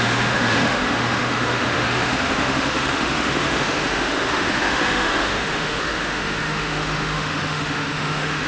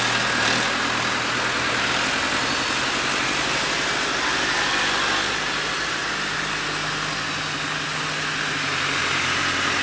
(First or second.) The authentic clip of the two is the second